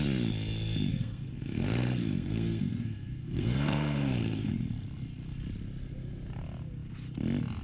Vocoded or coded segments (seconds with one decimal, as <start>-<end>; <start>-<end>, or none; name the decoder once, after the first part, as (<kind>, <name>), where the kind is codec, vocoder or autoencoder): 0.9-4.5 (codec, SNAC)